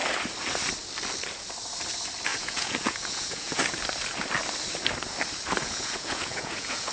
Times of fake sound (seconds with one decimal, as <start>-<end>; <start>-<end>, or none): 2.3-3.6; 5.6-6.9